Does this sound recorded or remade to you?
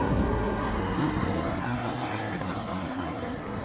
remade